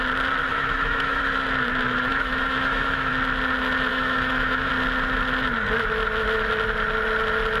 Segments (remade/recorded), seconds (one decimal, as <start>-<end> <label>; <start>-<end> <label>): 0.0-0.5 recorded; 0.5-1.2 remade; 1.2-2.1 recorded; 2.1-3.1 remade; 3.1-3.9 recorded; 3.9-4.7 remade; 4.7-7.6 recorded